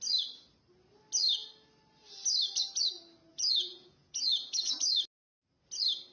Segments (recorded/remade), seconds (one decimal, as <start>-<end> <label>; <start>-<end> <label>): 0.0-3.3 recorded; 3.3-4.7 remade; 4.7-6.1 recorded